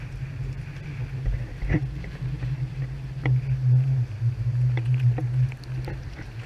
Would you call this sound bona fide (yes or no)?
yes